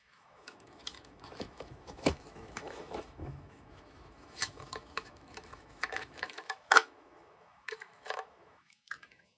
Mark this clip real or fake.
fake